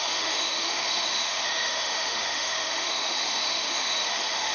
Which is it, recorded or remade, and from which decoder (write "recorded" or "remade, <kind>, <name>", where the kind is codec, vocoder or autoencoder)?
remade, autoencoder, DAC-VAE